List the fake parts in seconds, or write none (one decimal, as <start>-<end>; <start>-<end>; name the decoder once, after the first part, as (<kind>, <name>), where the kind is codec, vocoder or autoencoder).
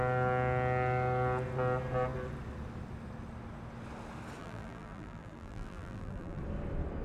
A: 4.4-6.4 (vocoder, BigVGAN v2)